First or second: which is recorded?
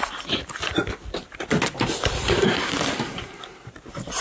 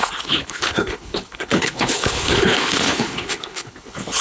first